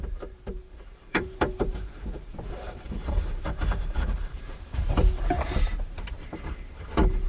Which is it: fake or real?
fake